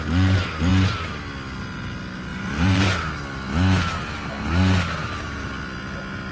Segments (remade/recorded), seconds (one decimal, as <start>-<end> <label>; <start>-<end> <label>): 0.0-2.3 recorded; 2.3-3.1 remade; 3.1-5.0 recorded; 5.0-5.5 remade; 5.5-6.3 recorded